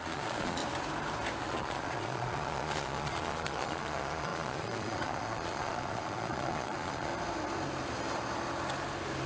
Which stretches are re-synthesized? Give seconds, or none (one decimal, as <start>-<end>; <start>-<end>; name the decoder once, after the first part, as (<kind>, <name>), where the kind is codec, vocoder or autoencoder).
0.0-0.6 (vocoder, Vocos); 1.4-7.1